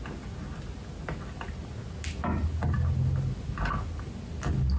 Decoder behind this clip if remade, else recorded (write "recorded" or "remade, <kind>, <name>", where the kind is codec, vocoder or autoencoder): recorded